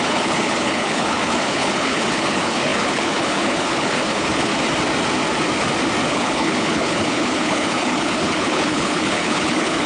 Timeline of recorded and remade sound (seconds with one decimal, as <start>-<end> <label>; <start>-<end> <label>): 0.0-4.5 remade; 4.5-6.1 recorded; 6.1-9.9 remade